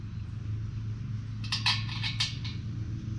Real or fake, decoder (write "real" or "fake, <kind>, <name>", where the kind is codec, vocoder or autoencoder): real